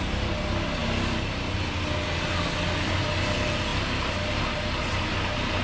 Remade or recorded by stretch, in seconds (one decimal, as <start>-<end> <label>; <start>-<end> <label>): 0.0-5.6 recorded